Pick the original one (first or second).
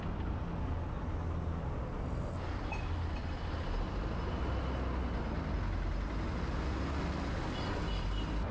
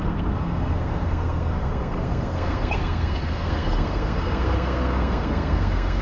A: first